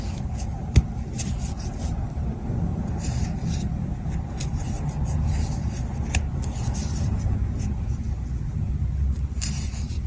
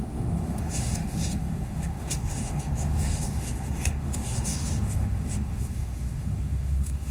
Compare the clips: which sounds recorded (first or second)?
first